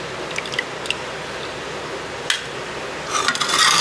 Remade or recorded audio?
recorded